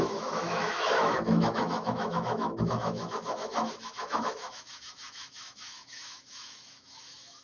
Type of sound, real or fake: fake